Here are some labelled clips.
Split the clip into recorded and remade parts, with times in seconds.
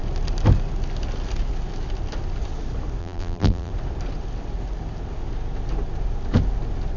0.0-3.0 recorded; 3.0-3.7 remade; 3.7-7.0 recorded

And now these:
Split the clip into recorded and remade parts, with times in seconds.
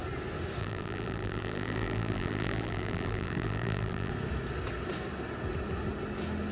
0.0-0.6 recorded; 0.6-4.1 remade; 4.1-6.5 recorded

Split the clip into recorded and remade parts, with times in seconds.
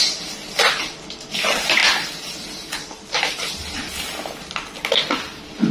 0.0-5.7 recorded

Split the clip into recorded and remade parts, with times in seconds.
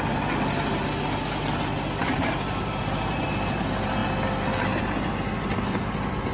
0.0-2.0 recorded; 2.0-3.6 remade; 3.6-6.3 recorded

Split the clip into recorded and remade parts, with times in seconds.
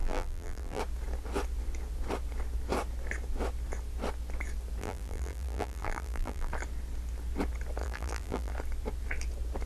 0.0-0.8 remade; 0.8-4.8 recorded; 4.8-6.5 remade; 6.5-7.8 recorded; 7.8-8.5 remade; 8.5-9.7 recorded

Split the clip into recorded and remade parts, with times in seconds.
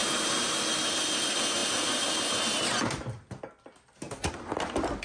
0.0-5.0 recorded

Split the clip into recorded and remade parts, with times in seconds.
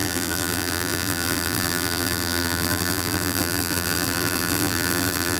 0.0-5.4 remade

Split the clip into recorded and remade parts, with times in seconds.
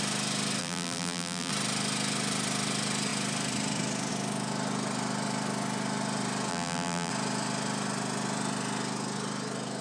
0.0-0.6 recorded; 0.6-1.5 remade; 1.5-6.5 recorded; 6.5-7.1 remade; 7.1-9.8 recorded